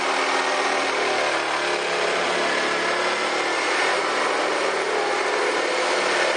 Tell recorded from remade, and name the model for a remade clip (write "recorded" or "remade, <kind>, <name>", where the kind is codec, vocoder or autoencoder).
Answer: recorded